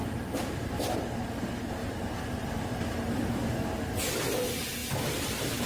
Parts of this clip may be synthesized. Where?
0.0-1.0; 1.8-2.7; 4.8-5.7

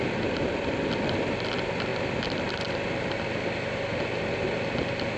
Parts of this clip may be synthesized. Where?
none

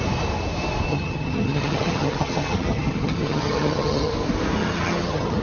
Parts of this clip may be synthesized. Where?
0.9-4.1; 4.6-5.4

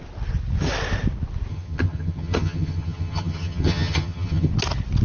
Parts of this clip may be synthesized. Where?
1.5-4.5